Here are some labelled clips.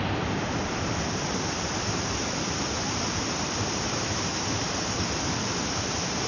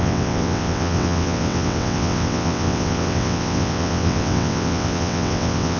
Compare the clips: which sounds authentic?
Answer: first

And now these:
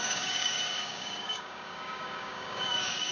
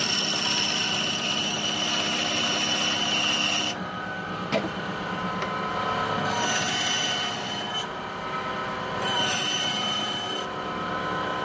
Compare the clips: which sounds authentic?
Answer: second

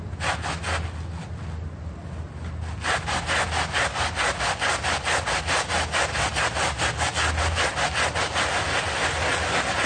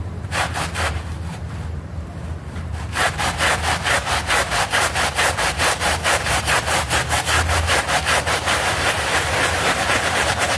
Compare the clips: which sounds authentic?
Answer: first